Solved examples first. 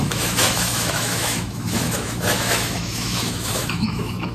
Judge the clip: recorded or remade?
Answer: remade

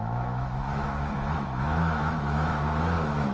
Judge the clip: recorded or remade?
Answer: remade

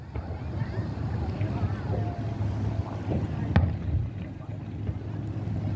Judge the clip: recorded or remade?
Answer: recorded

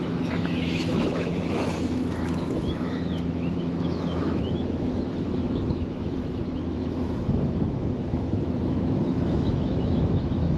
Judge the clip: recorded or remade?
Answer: remade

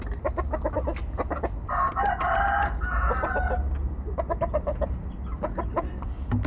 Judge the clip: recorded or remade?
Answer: recorded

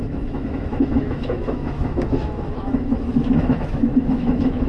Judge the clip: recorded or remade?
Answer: remade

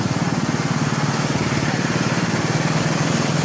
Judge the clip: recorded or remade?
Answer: recorded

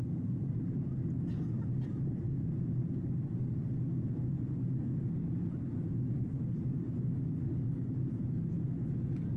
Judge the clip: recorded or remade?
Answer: recorded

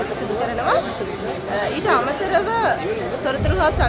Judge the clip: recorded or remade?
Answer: recorded